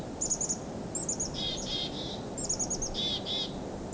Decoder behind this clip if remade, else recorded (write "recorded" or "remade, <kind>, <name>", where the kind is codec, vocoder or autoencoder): recorded